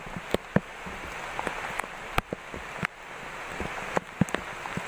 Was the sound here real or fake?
real